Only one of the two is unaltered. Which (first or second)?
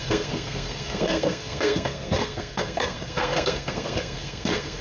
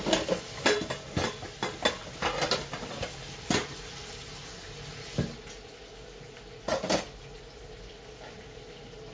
second